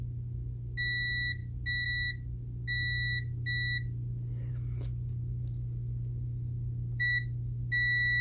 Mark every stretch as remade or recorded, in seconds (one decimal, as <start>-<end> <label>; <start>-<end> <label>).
0.0-8.2 recorded